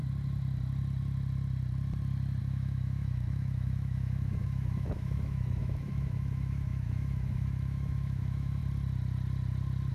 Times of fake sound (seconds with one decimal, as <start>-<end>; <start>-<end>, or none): 2.4-8.6